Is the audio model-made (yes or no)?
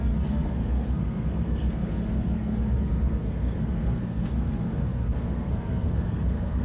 yes